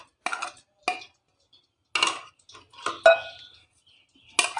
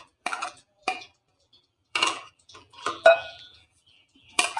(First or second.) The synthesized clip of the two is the second